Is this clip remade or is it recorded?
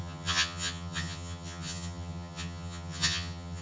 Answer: remade